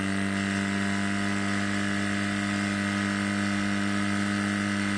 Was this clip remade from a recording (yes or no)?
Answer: no